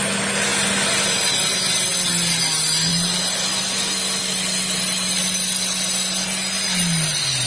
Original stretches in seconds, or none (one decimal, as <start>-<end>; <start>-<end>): 0.0-7.5